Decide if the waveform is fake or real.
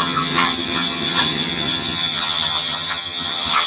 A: fake